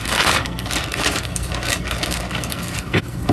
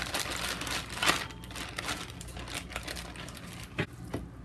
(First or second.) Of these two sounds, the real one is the second